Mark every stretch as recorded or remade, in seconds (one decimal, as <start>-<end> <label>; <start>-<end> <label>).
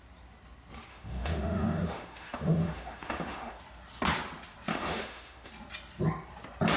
0.0-0.9 recorded; 0.9-3.6 remade; 3.6-4.7 recorded; 4.7-5.5 remade; 5.5-6.8 recorded